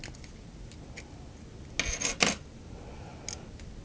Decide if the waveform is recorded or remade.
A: recorded